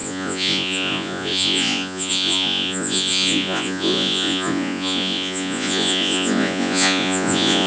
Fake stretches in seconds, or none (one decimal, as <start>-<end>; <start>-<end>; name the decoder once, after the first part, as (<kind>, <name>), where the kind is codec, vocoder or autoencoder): 0.0-7.7 (vocoder, Vocos)